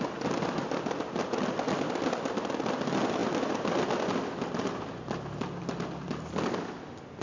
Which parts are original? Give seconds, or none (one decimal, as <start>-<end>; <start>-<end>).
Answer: 0.0-7.2